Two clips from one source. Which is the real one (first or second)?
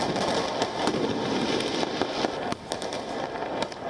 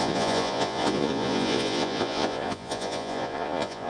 first